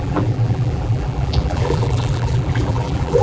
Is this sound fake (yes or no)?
yes